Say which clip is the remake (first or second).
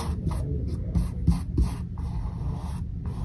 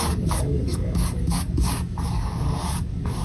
second